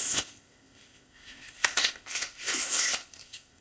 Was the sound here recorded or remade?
remade